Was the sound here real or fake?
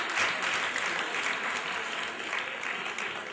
real